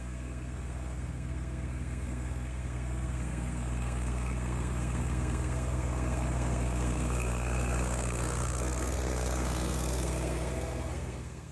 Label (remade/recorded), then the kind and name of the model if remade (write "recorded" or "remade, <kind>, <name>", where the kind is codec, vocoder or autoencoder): remade, codec, SNAC